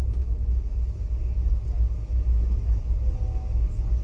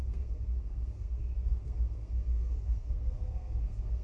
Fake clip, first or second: second